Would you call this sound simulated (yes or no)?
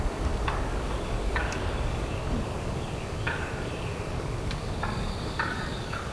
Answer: yes